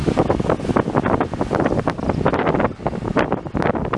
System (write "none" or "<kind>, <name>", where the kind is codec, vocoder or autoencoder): none